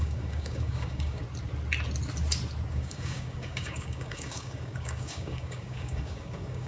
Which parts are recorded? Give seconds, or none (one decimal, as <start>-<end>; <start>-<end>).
1.2-2.7